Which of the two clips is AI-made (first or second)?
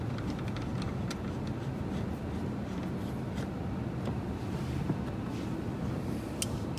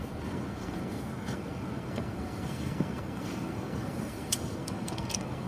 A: second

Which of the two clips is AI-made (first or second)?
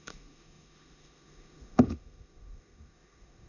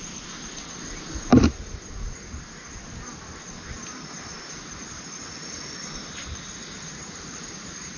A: first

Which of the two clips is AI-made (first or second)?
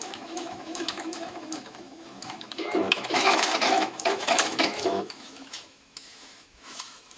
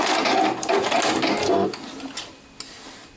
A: first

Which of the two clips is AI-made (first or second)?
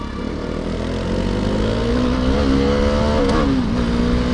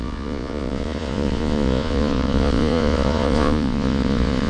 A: second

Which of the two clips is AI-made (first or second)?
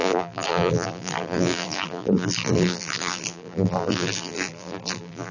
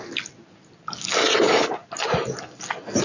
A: first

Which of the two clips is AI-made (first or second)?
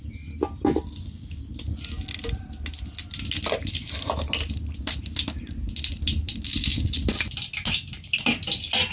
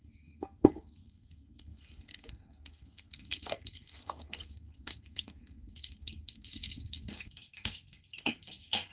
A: second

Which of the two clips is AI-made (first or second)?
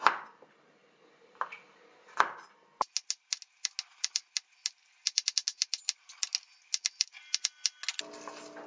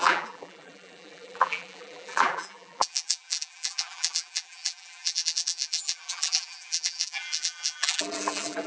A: second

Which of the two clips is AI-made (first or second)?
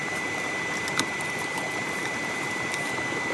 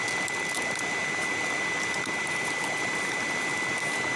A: first